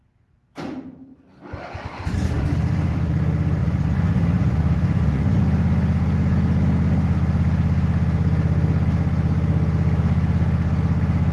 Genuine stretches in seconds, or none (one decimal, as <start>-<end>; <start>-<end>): 0.0-3.6; 5.4-11.3